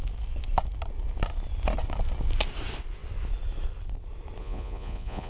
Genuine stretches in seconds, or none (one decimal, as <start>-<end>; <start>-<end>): 0.0-4.4